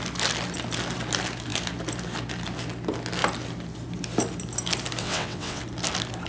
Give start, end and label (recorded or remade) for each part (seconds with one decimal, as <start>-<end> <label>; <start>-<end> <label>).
0.0-5.0 recorded; 5.0-5.6 remade; 5.6-6.3 recorded